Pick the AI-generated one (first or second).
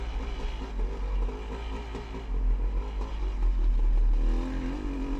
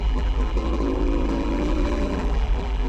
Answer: second